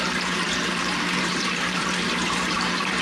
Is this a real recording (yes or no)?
no